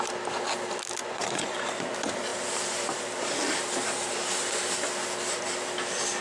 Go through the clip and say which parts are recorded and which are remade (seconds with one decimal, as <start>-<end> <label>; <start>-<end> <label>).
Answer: 0.0-1.0 recorded; 1.0-1.9 remade; 1.9-6.2 recorded